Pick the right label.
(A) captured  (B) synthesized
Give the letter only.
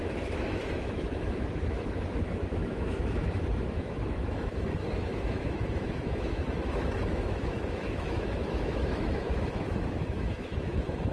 B